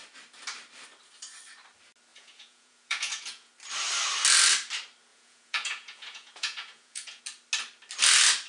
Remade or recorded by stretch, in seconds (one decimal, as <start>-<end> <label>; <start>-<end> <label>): 0.0-2.1 recorded; 2.1-3.5 remade; 3.5-5.1 recorded; 5.1-7.2 remade; 7.2-8.5 recorded